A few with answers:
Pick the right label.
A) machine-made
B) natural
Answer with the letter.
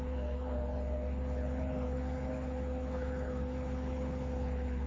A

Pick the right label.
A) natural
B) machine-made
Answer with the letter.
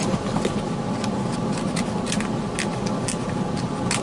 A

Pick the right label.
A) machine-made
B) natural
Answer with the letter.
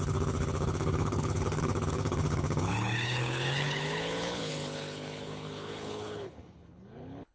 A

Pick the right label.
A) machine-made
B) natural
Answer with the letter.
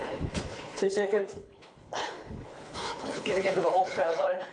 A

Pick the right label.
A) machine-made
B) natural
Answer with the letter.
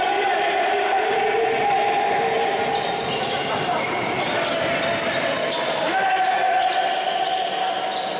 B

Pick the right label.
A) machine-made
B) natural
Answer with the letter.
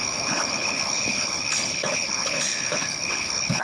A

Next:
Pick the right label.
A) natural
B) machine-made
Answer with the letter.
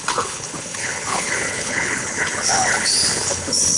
B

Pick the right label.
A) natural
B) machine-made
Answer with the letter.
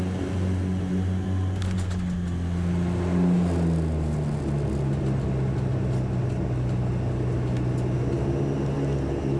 A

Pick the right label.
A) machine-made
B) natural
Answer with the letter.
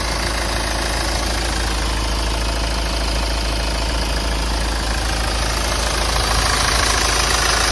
B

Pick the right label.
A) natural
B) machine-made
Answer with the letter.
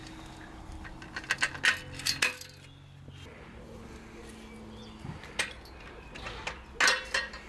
A